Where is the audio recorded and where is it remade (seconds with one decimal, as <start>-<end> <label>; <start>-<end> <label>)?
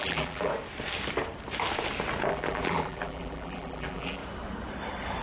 0.0-0.5 remade; 0.5-2.3 recorded; 2.3-4.2 remade; 4.2-5.2 recorded